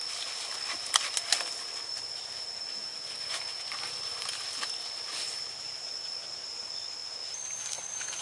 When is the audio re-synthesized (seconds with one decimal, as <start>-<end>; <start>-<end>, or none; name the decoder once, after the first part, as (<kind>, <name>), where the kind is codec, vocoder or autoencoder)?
none